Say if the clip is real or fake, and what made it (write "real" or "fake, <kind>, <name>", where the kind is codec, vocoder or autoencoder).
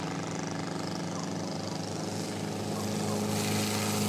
real